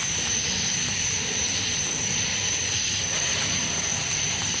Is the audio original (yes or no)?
yes